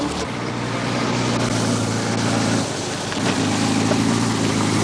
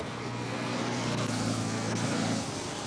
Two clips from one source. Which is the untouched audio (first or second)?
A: first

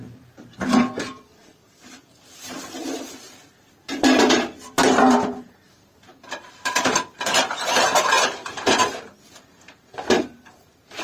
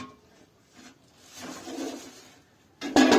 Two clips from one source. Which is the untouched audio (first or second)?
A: second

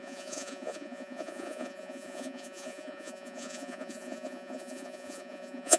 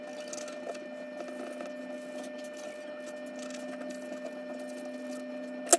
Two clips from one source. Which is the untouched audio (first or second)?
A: second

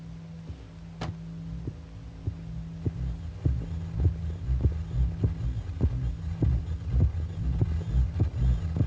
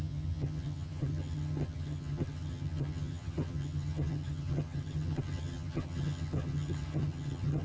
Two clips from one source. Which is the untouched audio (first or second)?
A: first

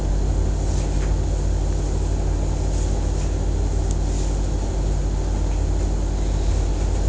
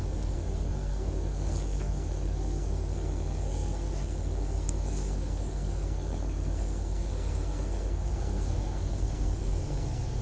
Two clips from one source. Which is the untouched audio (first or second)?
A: first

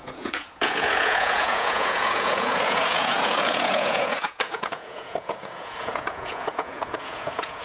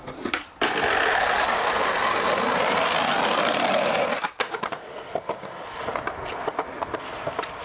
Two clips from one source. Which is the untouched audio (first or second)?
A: second